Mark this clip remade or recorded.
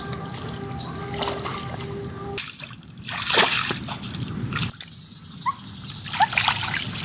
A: recorded